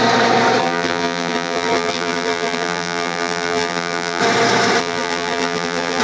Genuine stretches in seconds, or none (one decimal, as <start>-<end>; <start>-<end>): 0.0-0.6; 4.2-4.8